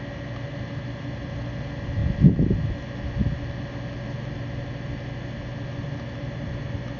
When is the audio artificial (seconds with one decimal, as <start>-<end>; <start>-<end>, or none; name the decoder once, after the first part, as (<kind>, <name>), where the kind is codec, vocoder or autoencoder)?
none